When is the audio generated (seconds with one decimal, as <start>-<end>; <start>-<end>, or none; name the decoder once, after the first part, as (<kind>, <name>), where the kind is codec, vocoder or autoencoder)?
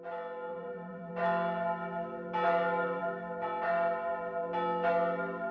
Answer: 0.5-1.1 (vocoder, BigVGAN v2)